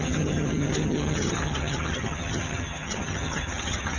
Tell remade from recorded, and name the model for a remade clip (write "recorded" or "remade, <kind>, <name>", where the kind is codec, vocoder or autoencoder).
remade, vocoder, HiFi-GAN